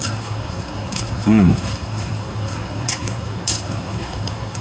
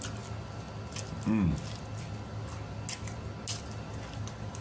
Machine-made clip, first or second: first